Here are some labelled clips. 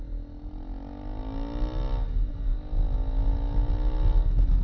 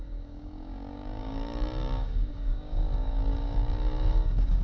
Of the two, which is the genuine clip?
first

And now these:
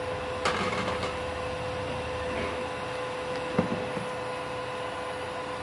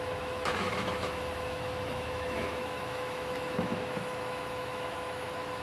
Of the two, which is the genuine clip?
first